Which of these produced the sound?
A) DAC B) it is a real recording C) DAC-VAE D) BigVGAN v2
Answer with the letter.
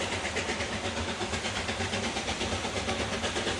B